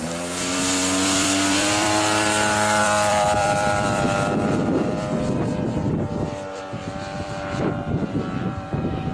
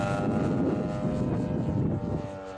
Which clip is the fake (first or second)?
first